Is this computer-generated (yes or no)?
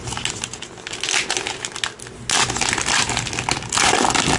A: no